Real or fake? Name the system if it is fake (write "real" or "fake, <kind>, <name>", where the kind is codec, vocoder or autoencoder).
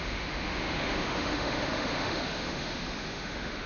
fake, autoencoder, DAC-VAE